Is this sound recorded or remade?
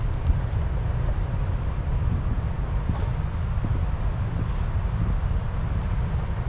recorded